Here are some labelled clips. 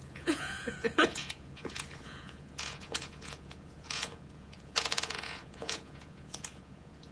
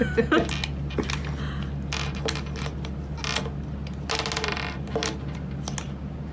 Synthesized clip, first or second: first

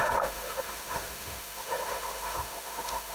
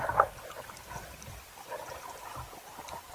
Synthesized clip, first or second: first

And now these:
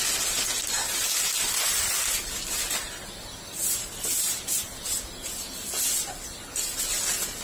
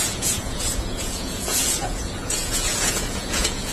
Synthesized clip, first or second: second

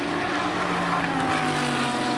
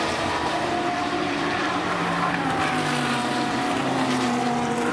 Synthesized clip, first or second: second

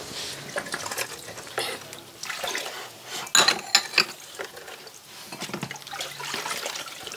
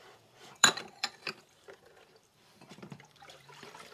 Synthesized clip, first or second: second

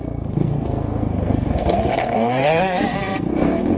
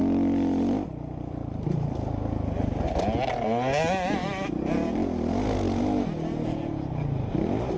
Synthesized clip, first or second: first